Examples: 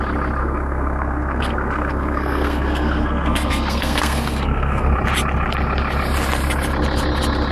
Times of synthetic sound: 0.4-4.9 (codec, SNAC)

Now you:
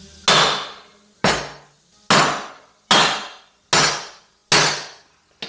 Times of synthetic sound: none